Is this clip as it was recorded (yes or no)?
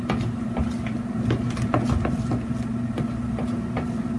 yes